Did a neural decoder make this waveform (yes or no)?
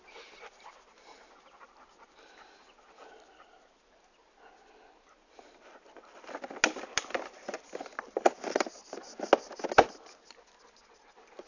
no